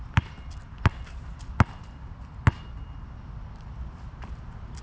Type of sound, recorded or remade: recorded